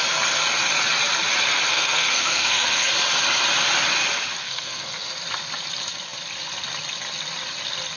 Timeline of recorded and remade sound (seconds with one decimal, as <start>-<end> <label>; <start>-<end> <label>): 0.0-1.7 recorded; 1.7-2.9 remade; 2.9-4.4 recorded; 4.4-5.1 remade; 5.1-8.0 recorded

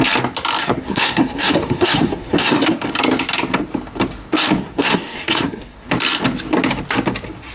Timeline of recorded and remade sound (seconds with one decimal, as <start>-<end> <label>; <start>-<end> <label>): 0.0-0.6 recorded; 0.6-2.8 remade; 2.8-4.6 recorded; 4.6-5.9 remade; 5.9-7.5 recorded